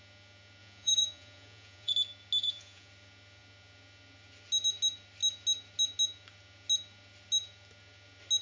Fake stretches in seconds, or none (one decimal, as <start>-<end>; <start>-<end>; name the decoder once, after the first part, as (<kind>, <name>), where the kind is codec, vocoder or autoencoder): 0.6-1.9 (vocoder, Vocos); 2.4-2.9